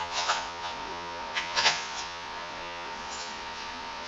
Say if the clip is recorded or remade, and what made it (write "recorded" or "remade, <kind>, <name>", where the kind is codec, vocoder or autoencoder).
remade, vocoder, Vocos